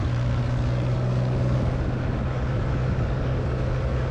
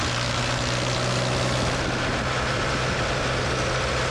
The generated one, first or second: first